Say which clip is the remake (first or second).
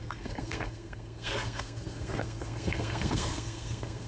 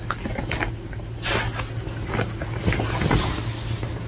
first